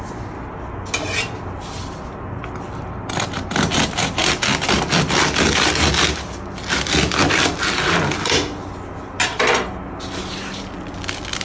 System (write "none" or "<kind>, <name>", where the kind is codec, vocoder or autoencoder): none